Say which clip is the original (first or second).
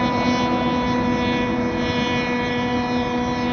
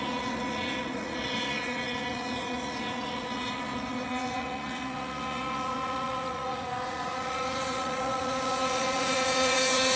first